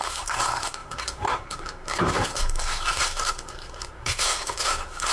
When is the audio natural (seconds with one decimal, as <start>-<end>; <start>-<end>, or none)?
none